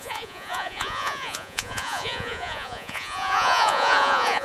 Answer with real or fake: fake